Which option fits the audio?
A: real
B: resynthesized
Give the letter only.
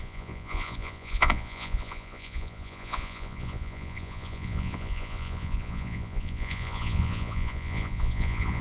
B